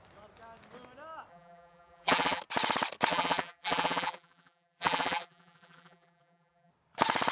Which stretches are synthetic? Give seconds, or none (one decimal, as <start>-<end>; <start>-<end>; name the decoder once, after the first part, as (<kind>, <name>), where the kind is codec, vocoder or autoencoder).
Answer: 1.3-2.4 (vocoder, BigVGAN v2); 3.1-6.7